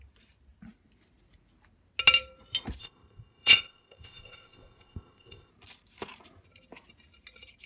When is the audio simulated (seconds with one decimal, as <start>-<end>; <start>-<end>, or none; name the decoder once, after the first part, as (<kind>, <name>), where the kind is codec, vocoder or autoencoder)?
2.8-5.5 (codec, ZipCodec)